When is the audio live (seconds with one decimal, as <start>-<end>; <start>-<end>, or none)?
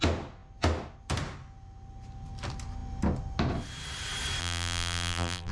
0.0-4.4